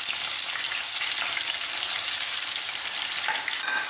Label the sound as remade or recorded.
recorded